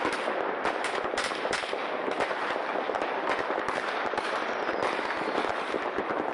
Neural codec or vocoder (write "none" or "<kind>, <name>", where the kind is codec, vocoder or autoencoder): none